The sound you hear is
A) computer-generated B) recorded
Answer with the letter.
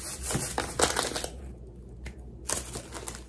B